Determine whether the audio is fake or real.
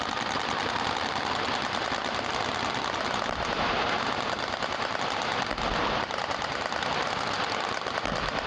real